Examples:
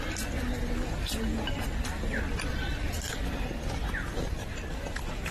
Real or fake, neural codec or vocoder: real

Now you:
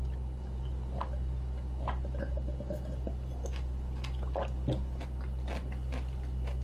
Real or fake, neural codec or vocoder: real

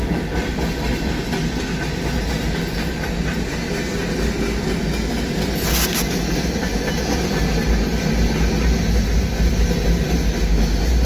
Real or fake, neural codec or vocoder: real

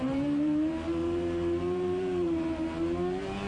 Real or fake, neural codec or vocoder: fake, vocoder, BigVGAN v2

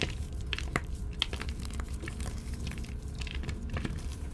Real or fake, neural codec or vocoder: fake, vocoder, BigVGAN v2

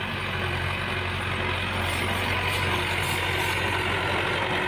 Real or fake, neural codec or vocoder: real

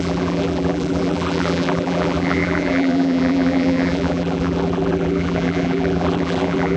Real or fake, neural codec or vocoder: fake, vocoder, BigVGAN v2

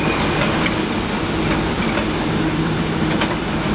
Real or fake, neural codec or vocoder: fake, vocoder, BigVGAN v2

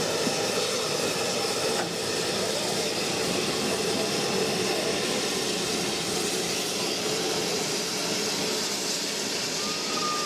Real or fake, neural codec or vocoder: real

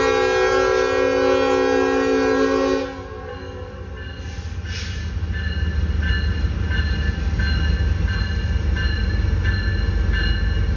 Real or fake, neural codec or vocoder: real